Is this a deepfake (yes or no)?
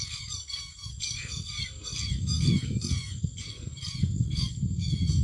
yes